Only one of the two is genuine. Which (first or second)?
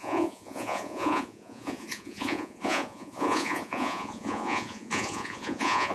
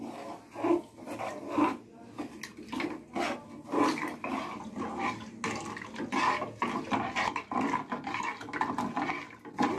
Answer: second